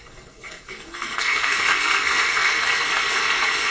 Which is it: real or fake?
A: fake